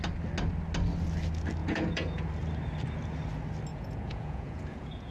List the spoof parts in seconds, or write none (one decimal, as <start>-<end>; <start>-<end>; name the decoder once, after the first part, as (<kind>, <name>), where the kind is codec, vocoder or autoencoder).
1.6-2.3 (vocoder, Vocos); 3.7-5.1

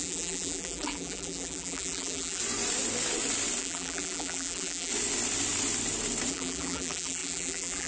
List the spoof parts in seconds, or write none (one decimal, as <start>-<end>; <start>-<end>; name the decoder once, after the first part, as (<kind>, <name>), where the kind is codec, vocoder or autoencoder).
0.0-2.4 (vocoder, BigVGAN v2); 3.6-4.9; 6.3-7.9

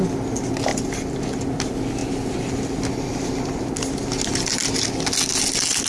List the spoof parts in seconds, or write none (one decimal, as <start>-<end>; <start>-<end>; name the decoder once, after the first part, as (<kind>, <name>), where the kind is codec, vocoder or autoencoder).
none

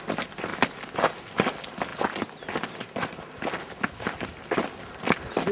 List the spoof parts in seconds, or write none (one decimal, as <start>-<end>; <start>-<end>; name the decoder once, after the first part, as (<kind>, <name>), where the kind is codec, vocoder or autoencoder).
0.5-1.2 (vocoder, BigVGAN v2)

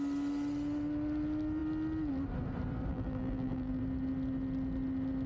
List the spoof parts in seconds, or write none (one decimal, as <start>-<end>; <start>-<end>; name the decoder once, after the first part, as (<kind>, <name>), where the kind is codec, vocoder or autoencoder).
2.9-3.8 (vocoder, BigVGAN v2)